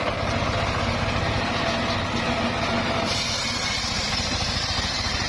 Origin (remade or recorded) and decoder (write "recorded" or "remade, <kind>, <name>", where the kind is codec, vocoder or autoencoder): recorded